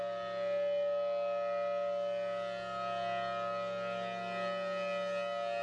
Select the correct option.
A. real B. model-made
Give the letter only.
A